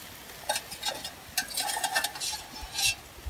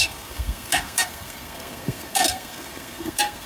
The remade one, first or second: second